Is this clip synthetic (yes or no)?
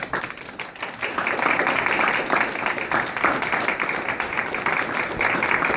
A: no